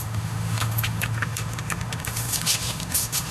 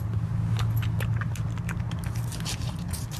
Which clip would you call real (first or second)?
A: second